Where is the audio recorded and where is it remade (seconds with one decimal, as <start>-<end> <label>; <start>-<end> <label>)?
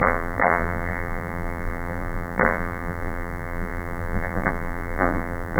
0.0-5.6 remade